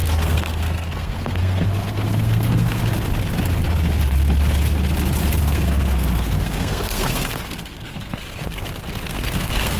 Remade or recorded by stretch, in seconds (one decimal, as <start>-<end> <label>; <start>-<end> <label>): 0.0-2.8 remade; 2.8-5.4 recorded; 5.4-9.8 remade